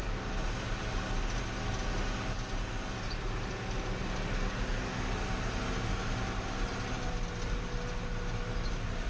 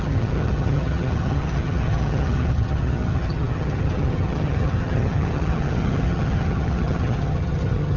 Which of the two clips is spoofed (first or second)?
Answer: second